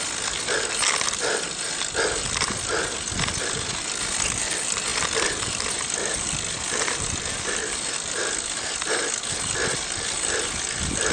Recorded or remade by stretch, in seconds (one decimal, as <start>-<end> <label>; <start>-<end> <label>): 0.0-11.1 recorded